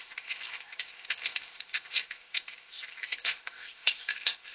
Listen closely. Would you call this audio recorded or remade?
remade